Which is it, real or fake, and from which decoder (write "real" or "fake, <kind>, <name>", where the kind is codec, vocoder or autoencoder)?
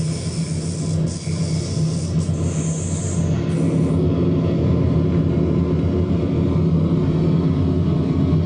real